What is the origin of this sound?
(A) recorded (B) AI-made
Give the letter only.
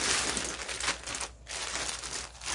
A